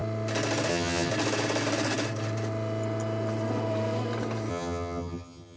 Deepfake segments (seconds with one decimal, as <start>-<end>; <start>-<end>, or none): 0.7-1.1; 4.5-5.6